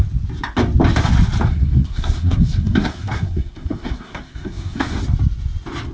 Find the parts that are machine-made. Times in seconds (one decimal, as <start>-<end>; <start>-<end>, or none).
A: 1.5-5.0